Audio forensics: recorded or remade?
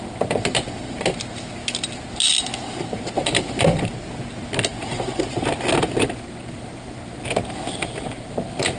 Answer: recorded